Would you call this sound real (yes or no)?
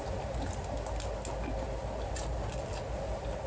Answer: yes